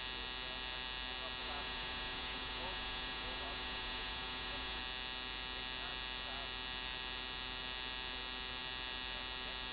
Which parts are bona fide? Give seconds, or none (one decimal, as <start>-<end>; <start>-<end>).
0.0-1.4; 4.8-9.7